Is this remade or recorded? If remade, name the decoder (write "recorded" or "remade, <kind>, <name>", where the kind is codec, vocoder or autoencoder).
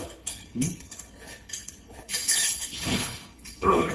remade, codec, HILCodec